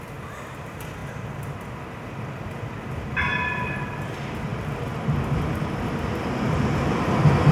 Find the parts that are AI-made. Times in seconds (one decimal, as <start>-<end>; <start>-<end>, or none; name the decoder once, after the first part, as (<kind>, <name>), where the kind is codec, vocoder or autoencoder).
none